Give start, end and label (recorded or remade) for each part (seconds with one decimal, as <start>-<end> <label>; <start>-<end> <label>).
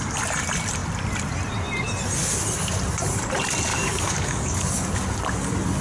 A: 0.0-3.7 recorded; 3.7-4.9 remade; 4.9-5.8 recorded